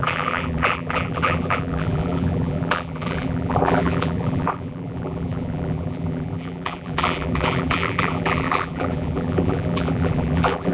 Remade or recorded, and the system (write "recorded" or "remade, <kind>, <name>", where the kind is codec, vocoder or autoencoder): remade, vocoder, BigVGAN v2